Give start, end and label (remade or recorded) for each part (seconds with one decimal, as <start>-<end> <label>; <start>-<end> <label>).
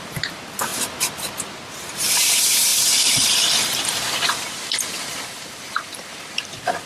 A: 0.0-0.7 remade; 0.7-1.7 recorded; 1.7-6.9 remade